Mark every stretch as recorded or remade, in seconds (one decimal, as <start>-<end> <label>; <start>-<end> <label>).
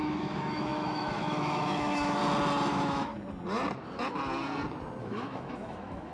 0.0-2.2 remade; 2.2-2.7 recorded; 2.7-3.1 remade; 3.1-5.0 recorded; 5.0-6.1 remade